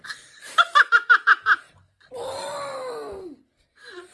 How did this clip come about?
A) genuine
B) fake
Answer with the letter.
A